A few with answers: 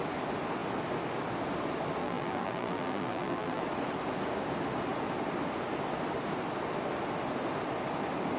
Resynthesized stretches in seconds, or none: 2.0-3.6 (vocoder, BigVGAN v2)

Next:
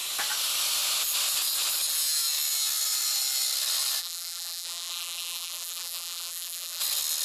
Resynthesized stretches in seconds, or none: 4.0-6.8 (vocoder, BigVGAN v2)

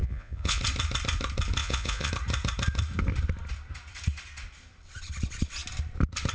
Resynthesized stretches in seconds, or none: 0.0-0.6 (vocoder, Vocos); 1.6-2.1

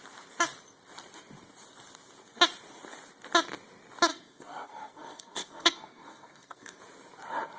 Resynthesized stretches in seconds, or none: 4.1-6.8 (codec, SNAC)

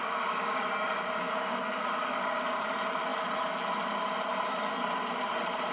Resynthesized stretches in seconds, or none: 0.0-2.4 (codec, DAC)